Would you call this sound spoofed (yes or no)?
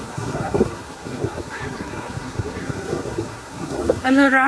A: yes